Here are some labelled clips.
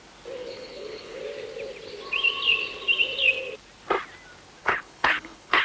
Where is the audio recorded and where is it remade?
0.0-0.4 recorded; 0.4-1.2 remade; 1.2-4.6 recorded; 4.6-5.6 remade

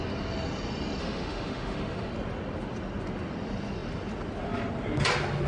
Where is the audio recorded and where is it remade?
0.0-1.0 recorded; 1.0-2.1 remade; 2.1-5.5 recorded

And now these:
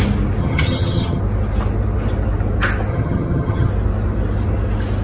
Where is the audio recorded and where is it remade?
0.0-0.4 recorded; 0.4-1.2 remade; 1.2-2.9 recorded; 2.9-3.7 remade; 3.7-5.0 recorded

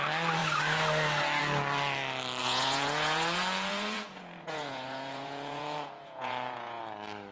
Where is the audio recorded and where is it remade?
0.0-2.4 recorded; 2.4-6.8 remade; 6.8-7.3 recorded